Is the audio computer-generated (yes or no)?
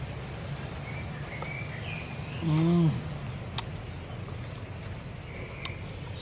no